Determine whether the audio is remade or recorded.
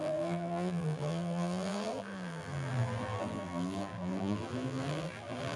remade